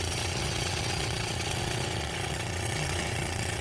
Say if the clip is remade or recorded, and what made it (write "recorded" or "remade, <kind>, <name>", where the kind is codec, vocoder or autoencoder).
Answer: remade, vocoder, WaveNeXt